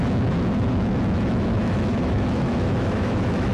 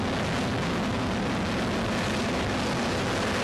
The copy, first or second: first